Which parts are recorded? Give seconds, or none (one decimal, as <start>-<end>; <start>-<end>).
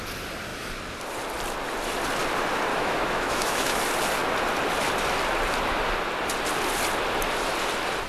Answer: 0.0-2.7; 3.8-8.1